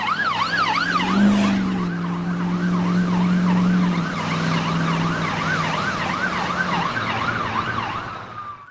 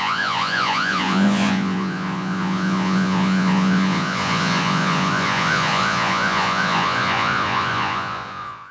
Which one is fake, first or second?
second